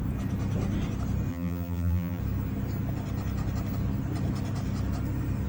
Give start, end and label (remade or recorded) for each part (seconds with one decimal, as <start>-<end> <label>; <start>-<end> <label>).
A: 0.0-1.3 recorded; 1.3-2.2 remade; 2.2-5.5 recorded